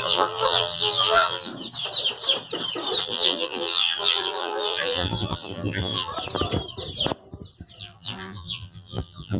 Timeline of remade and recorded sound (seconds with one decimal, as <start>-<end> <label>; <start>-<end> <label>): 0.0-1.5 remade; 1.5-3.0 recorded; 3.0-6.1 remade; 6.1-7.8 recorded; 7.8-9.4 remade